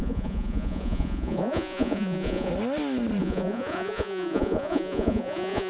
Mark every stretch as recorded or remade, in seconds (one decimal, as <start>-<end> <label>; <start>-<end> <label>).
0.0-2.5 remade; 2.5-3.2 recorded; 3.2-5.7 remade

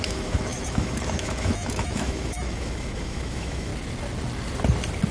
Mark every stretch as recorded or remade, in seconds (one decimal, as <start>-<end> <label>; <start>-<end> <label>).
0.0-3.7 remade; 3.7-5.1 recorded

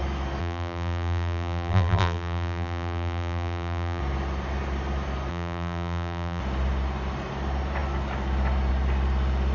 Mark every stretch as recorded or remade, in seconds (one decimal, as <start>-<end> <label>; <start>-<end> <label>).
0.0-0.4 recorded; 0.4-4.0 remade; 4.0-5.3 recorded; 5.3-6.4 remade; 6.4-9.5 recorded

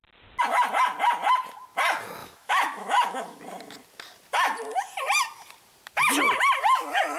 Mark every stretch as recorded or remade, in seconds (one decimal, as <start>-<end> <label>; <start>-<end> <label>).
0.0-2.2 recorded; 2.2-3.4 remade; 3.4-7.2 recorded

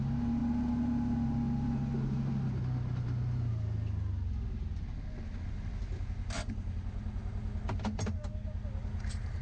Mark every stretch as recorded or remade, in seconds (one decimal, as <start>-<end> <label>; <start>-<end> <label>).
0.0-9.4 recorded